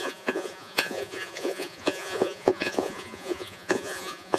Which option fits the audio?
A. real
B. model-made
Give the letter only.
B